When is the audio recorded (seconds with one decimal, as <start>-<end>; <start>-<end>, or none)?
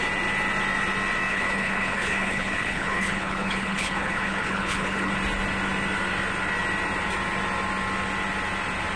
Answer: 0.0-1.3; 5.1-9.0